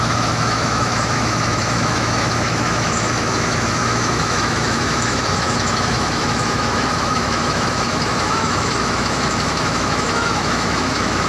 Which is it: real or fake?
fake